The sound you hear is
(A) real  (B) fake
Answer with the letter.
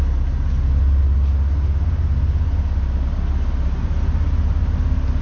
A